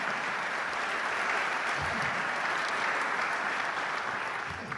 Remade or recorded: recorded